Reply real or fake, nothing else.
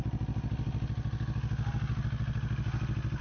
real